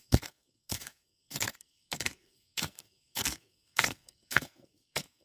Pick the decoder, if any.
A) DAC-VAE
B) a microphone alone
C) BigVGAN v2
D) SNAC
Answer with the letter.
D